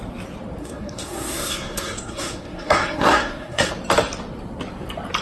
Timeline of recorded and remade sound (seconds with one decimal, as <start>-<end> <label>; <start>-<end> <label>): 0.0-0.6 recorded; 0.6-3.7 remade; 3.7-5.2 recorded